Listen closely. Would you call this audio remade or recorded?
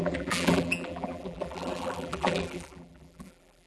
remade